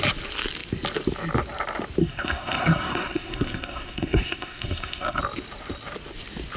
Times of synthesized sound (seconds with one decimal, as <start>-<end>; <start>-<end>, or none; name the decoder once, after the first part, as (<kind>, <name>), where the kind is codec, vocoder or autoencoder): 2.0-5.2 (codec, SNAC)